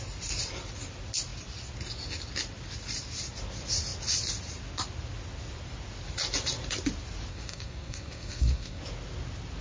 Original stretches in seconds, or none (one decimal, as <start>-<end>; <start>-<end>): 0.0-7.3; 8.8-9.6